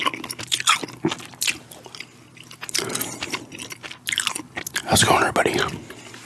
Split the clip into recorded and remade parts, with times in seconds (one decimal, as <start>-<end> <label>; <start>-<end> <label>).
0.0-6.3 recorded